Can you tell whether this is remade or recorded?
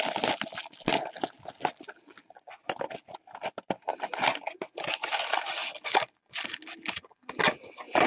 recorded